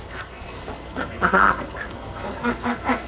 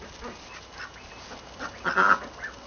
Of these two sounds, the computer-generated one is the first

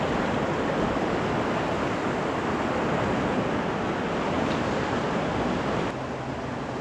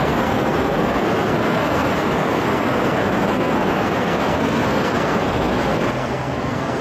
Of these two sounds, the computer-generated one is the second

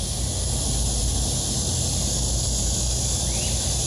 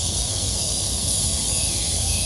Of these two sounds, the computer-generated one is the second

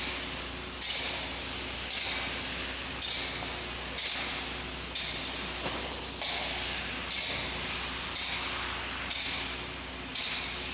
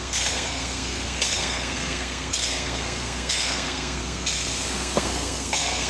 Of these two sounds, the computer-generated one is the second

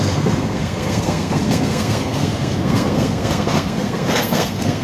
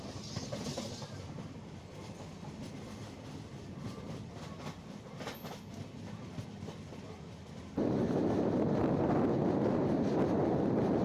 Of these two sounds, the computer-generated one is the first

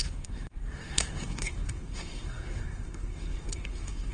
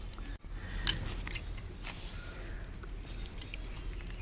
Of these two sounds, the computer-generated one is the first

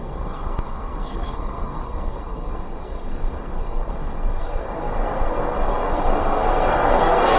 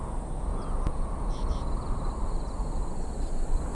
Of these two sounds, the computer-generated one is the first